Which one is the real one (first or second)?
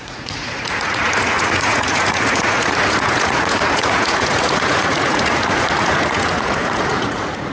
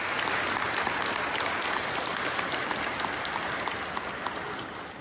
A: second